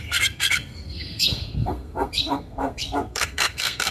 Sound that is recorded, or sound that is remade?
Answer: remade